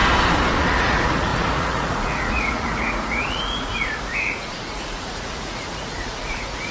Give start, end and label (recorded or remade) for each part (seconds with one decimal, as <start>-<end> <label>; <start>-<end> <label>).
0.0-0.6 recorded; 0.6-6.7 remade

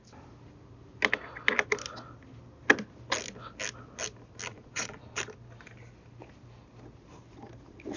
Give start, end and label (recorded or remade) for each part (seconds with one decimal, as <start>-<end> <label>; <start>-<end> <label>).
0.0-4.5 recorded; 4.5-5.2 remade; 5.2-8.0 recorded

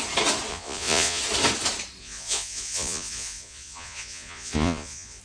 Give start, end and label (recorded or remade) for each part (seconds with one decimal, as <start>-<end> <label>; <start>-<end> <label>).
0.0-0.5 recorded; 0.5-1.2 remade; 1.2-2.0 recorded; 2.0-5.2 remade